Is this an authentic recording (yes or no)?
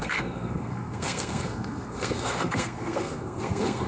no